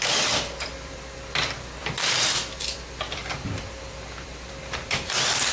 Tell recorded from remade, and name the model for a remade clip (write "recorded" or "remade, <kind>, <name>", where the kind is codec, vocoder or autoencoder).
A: remade, vocoder, BigVGAN v2